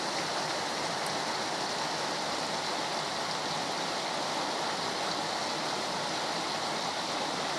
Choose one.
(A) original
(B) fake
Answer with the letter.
A